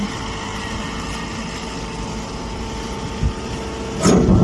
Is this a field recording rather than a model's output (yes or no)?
yes